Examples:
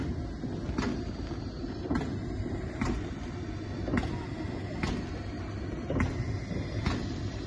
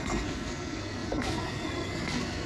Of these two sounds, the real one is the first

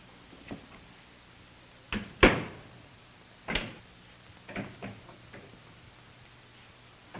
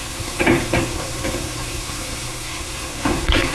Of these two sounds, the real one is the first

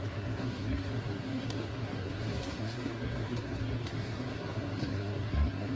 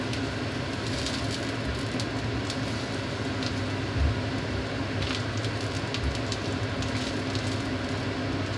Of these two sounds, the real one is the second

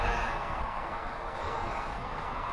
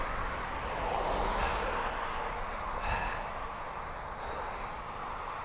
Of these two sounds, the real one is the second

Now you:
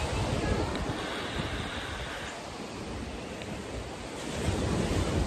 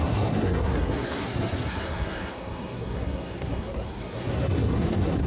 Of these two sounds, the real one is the first